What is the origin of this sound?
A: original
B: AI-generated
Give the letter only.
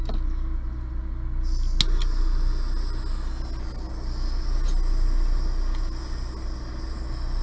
A